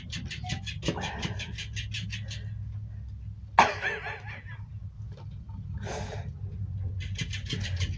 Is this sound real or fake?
real